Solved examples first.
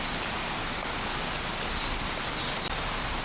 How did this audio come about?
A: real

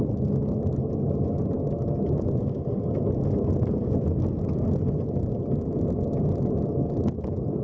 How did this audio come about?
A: real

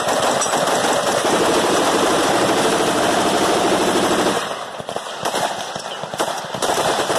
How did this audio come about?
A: fake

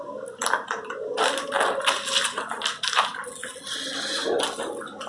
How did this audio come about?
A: real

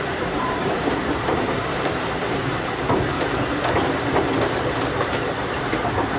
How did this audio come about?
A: fake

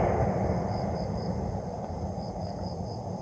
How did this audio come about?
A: fake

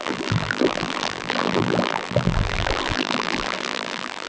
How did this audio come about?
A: fake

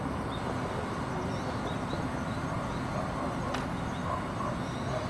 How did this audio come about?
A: real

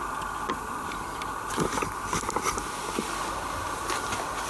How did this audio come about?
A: real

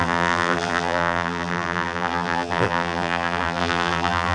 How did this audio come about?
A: fake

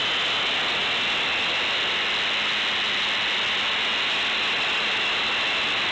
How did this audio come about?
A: real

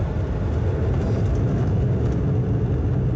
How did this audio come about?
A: real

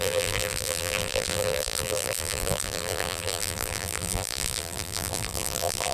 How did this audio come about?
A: fake